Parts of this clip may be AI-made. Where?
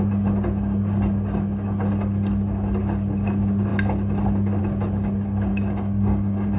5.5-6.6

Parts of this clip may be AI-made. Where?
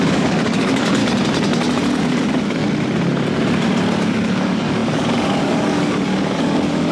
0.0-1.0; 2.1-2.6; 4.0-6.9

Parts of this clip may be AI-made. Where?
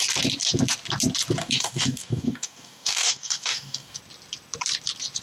1.4-4.0